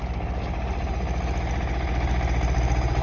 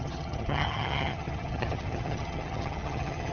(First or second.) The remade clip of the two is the second